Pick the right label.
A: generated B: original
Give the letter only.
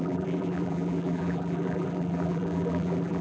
A